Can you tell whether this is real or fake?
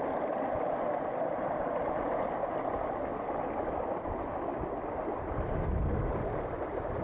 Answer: real